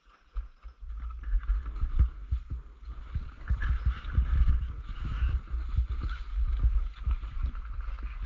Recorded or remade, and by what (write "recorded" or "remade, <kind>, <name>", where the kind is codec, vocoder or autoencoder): recorded